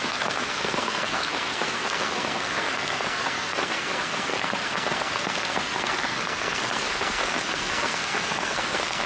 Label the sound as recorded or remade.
remade